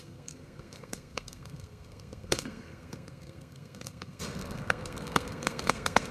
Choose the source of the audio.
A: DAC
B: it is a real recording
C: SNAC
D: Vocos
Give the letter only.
C